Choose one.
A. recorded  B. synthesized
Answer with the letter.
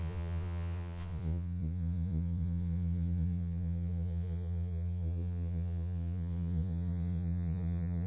B